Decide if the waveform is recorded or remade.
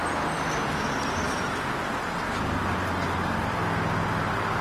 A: recorded